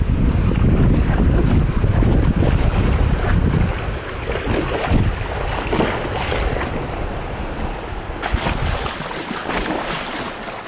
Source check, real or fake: real